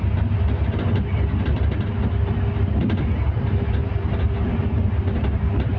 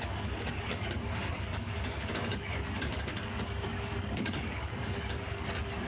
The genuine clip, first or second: first